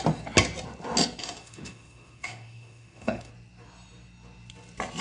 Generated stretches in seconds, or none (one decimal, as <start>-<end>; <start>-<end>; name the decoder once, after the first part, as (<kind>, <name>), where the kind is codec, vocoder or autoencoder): 1.2-3.3 (autoencoder, DAC-VAE)

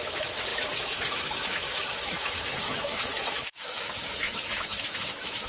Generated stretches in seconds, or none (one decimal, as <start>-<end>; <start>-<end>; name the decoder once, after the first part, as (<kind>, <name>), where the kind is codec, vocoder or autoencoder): 0.0-5.5 (autoencoder, DAC-VAE)

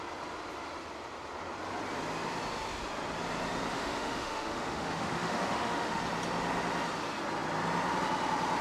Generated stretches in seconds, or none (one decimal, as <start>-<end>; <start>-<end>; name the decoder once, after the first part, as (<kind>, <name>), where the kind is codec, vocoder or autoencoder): 3.7-6.0 (autoencoder, DAC-VAE)